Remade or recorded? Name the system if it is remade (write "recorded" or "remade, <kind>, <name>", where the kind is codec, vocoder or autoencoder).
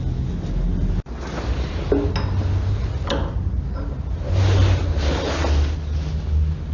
recorded